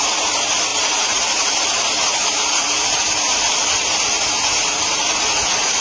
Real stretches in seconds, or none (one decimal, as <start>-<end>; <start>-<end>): 0.0-0.7; 3.0-5.8